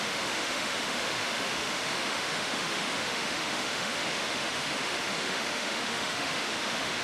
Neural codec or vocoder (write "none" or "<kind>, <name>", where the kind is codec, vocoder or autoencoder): autoencoder, DAC-VAE